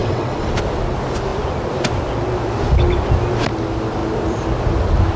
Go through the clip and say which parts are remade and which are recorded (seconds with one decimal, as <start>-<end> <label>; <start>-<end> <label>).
0.0-0.5 remade; 0.5-5.2 recorded